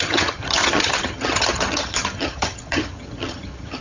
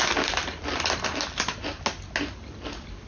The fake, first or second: first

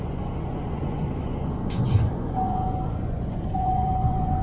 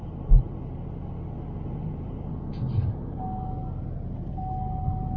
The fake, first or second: first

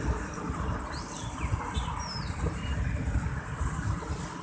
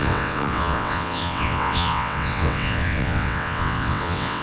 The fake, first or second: second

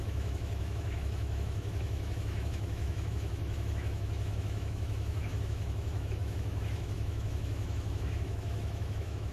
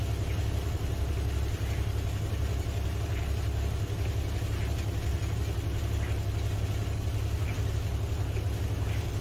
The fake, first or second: first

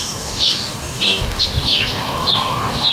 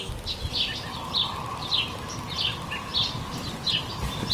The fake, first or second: first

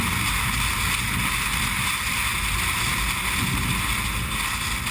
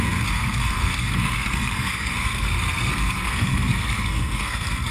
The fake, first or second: second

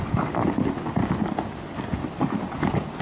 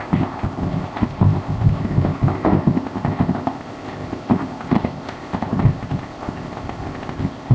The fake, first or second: second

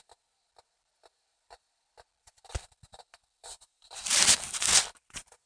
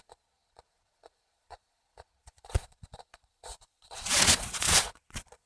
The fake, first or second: second